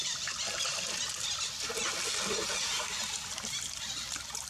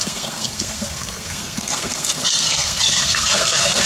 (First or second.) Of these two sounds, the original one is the first